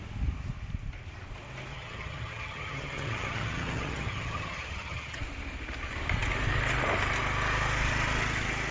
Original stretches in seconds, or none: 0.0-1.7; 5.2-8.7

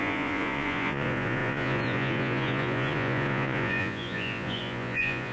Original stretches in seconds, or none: none